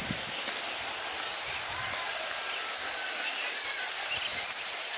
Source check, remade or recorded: recorded